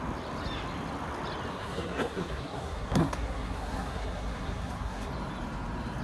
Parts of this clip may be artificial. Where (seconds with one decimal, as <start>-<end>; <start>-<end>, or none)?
1.5-5.1